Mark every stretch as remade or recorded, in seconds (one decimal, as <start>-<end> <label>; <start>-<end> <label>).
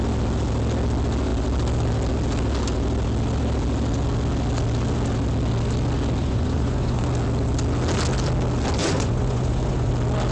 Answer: 0.0-6.2 recorded; 6.2-7.0 remade; 7.0-8.8 recorded; 8.8-9.9 remade; 9.9-10.3 recorded